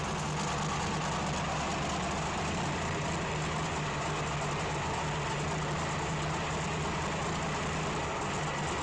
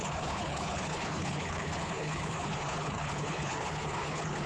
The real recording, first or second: first